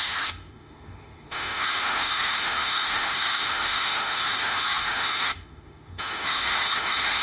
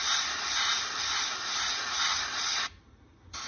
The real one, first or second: second